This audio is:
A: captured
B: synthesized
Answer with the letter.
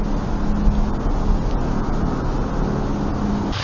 A